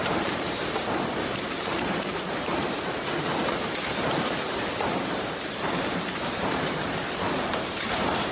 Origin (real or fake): fake